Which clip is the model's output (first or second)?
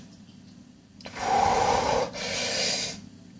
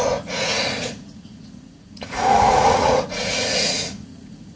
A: second